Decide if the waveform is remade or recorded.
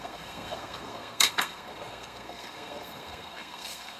remade